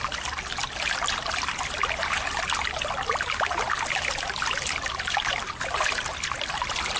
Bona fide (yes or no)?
yes